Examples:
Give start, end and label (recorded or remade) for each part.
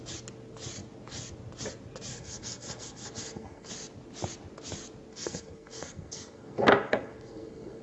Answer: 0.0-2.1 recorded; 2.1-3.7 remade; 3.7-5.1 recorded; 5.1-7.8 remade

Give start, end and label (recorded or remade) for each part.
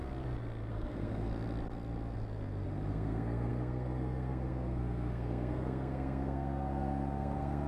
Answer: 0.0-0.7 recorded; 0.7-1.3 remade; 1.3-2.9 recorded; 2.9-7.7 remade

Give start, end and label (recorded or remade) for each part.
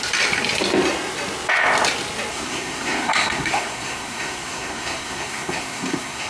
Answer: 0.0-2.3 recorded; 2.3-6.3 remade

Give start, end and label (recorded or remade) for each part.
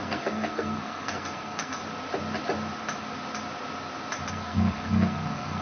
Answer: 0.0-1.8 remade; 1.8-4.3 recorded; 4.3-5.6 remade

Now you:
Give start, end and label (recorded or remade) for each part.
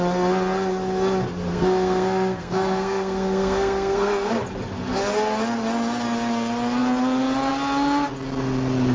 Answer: 0.0-1.5 recorded; 1.5-4.3 remade; 4.3-8.9 recorded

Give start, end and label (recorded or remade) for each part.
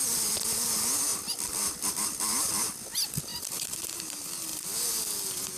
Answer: 0.0-5.6 recorded